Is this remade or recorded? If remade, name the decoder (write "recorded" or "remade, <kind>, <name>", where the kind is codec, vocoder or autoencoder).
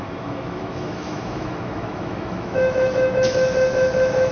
remade, autoencoder, DAC-VAE